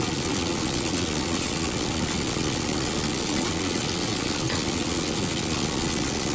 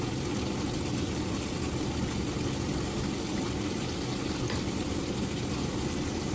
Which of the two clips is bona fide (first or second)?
second